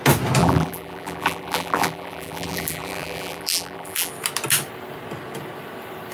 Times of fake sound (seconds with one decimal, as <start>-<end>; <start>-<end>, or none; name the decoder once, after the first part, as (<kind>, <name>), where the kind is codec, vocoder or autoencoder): 0.4-4.1 (vocoder, BigVGAN v2)